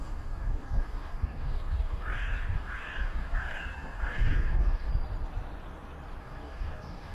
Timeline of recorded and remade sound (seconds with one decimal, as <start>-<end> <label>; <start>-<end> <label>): 0.0-4.9 remade; 4.9-6.2 recorded; 6.2-7.1 remade